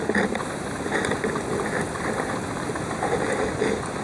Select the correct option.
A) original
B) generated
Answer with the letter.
A